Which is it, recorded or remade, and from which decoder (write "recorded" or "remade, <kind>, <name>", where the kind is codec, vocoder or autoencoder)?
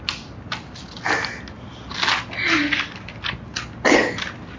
recorded